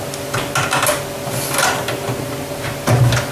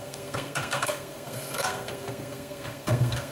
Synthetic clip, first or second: second